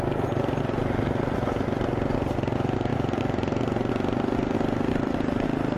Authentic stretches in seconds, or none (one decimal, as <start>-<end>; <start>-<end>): 0.0-5.8